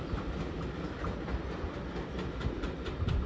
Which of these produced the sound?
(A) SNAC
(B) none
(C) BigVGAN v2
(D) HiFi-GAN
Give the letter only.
B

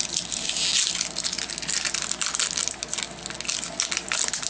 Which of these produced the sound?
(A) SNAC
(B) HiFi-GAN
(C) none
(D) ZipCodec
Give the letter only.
C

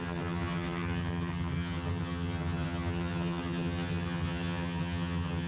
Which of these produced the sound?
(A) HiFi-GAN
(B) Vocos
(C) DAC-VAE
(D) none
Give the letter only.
A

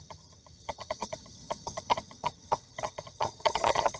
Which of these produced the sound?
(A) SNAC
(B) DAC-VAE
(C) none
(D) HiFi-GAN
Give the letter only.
D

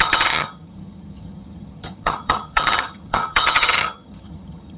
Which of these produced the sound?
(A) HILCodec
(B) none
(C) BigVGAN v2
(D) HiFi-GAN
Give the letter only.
D